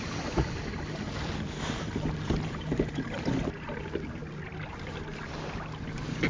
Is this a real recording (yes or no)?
yes